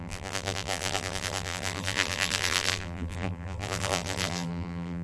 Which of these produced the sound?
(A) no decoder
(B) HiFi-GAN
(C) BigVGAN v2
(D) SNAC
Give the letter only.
C